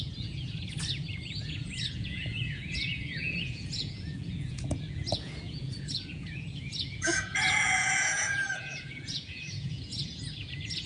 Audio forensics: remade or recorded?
remade